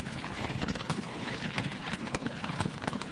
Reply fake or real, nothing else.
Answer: fake